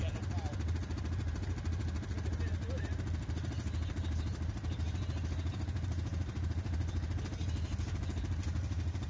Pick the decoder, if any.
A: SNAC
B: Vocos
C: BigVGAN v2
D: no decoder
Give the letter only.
D